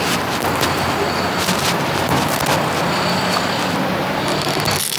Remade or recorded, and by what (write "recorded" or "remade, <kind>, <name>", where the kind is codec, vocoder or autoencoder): recorded